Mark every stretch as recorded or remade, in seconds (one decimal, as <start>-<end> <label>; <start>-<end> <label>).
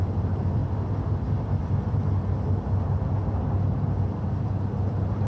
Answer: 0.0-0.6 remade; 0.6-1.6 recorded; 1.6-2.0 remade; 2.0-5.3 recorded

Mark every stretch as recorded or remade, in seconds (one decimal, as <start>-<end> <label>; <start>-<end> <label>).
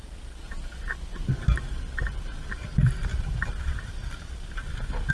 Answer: 0.0-5.1 recorded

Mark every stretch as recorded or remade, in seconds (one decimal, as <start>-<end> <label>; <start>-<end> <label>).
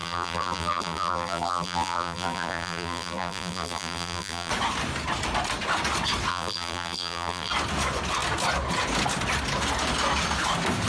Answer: 0.0-4.5 remade; 4.5-6.3 recorded; 6.3-7.5 remade; 7.5-10.9 recorded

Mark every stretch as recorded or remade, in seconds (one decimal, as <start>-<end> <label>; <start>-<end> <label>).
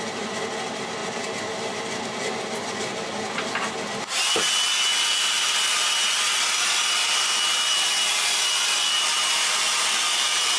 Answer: 0.0-10.6 recorded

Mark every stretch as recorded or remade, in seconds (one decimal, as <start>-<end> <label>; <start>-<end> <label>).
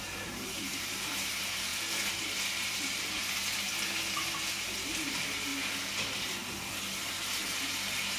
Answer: 0.0-1.7 remade; 1.7-2.5 recorded; 2.5-5.5 remade; 5.5-7.1 recorded; 7.1-8.2 remade